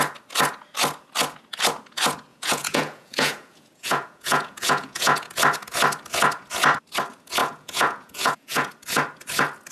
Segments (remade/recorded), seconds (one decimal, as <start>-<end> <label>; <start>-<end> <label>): 0.0-2.3 recorded; 2.3-5.3 remade; 5.3-7.4 recorded; 7.4-8.7 remade; 8.7-9.7 recorded